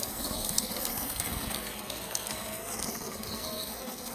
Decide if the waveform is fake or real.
fake